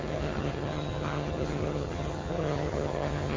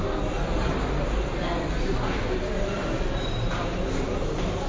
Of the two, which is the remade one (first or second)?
first